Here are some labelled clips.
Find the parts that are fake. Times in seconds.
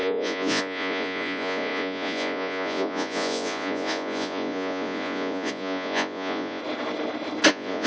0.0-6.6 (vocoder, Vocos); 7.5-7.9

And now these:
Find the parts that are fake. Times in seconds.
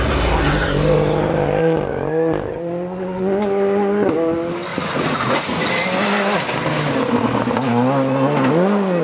4.7-5.6 (vocoder, Vocos)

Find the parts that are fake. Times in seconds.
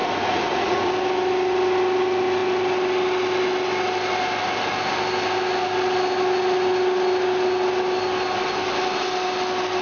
0.0-0.9 (vocoder, Vocos)